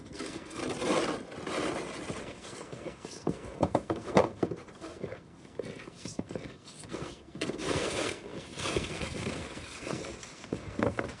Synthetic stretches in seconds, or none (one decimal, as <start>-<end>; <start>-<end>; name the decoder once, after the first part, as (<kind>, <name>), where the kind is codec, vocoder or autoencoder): 0.0-0.6 (codec, SNAC); 2.2-11.2